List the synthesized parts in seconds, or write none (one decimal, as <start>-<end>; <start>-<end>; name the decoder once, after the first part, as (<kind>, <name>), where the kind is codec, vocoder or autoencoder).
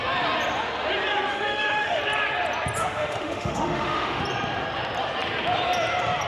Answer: 1.3-2.0 (autoencoder, DAC-VAE); 2.8-4.2